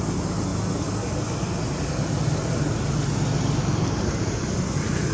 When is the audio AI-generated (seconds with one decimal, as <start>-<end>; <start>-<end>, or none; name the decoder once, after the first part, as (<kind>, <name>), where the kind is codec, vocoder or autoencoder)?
none